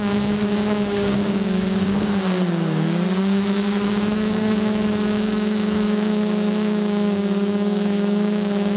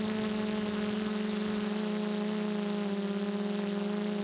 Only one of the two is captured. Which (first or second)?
second